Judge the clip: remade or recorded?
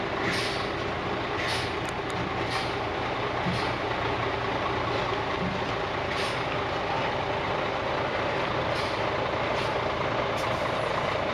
recorded